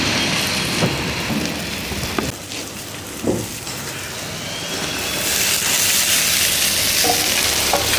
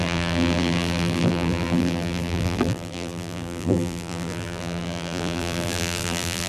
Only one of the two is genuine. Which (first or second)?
first